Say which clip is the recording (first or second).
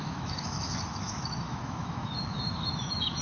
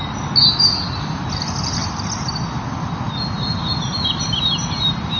second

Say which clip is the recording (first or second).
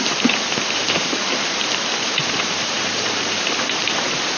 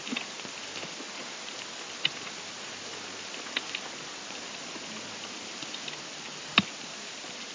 second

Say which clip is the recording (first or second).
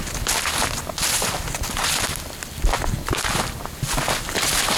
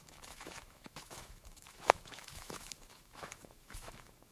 first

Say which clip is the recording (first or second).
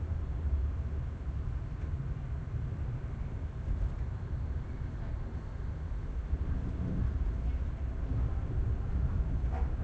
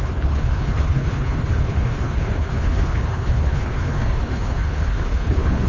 first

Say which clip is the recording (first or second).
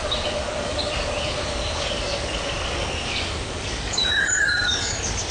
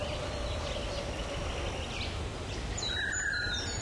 second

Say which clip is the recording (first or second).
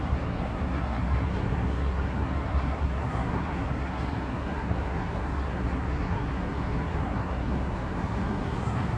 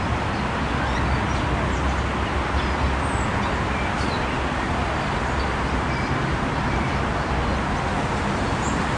second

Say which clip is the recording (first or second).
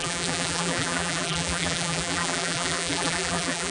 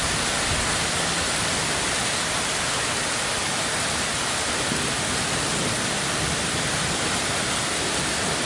second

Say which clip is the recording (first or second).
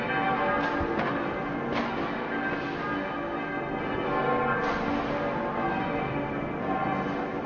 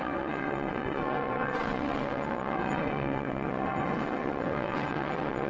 first